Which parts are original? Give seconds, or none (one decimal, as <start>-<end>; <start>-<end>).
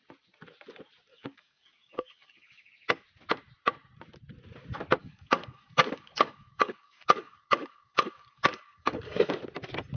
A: 0.0-1.1; 2.7-5.0; 9.4-10.0